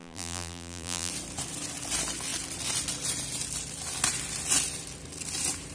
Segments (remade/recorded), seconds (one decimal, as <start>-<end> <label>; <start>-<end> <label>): 0.0-1.1 remade; 1.1-5.7 recorded